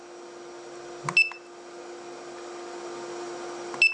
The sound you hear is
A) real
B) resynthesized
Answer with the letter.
A